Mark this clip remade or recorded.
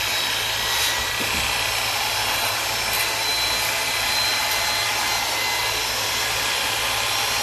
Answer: recorded